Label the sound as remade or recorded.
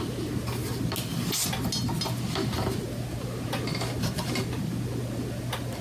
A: recorded